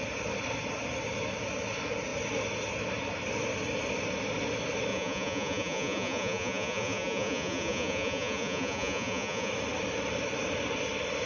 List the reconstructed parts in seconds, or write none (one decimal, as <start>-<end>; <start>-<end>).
4.9-9.5